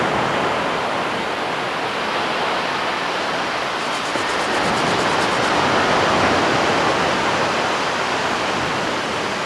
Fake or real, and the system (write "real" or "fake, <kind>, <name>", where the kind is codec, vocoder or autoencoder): real